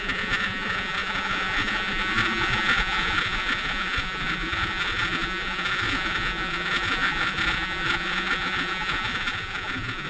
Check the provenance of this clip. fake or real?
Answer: fake